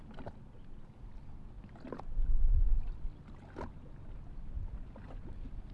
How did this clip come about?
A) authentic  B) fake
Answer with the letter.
A